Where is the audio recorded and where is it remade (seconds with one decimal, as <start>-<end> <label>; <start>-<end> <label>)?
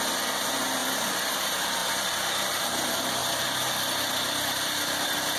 0.0-3.2 remade; 3.2-5.4 recorded